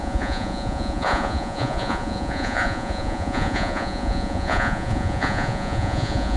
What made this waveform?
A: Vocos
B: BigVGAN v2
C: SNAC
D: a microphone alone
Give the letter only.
A